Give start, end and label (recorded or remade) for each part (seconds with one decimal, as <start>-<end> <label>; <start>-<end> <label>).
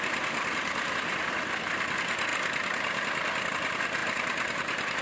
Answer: 0.0-5.0 recorded